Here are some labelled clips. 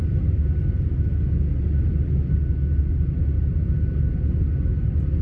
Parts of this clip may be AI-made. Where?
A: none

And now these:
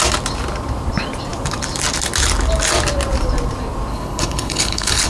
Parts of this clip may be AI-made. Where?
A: 3.9-5.1 (codec, HILCodec)

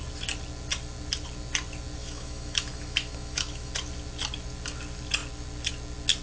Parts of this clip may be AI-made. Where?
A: 2.0-3.7 (autoencoder, DAC-VAE)

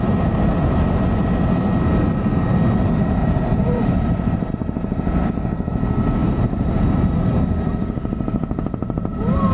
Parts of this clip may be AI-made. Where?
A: 3.2-4.5 (vocoder, BigVGAN v2); 6.2-6.8; 8.8-9.5

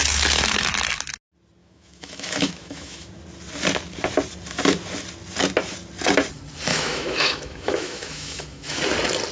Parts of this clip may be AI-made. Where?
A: 1.6-3.1 (autoencoder, DAC-VAE); 6.7-8.8

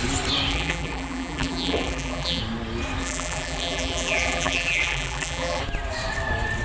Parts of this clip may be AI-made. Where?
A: 0.5-2.4 (vocoder, BigVGAN v2); 3.0-5.6

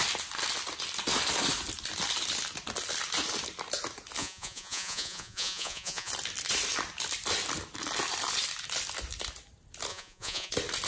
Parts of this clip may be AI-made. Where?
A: 4.2-6.1 (vocoder, Vocos); 9.9-10.5